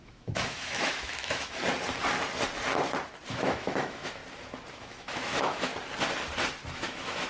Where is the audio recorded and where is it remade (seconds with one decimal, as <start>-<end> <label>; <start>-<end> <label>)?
0.0-1.6 remade; 1.6-3.3 recorded; 3.3-4.2 remade; 4.2-4.7 recorded; 4.7-5.7 remade; 5.7-6.7 recorded; 6.7-7.3 remade